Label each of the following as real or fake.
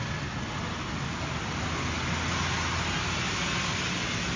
real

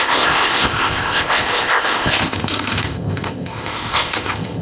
fake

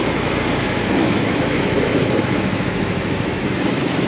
fake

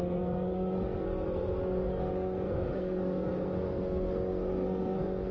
fake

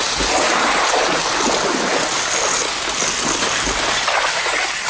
real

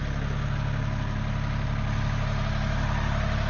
real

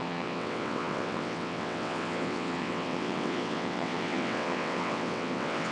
fake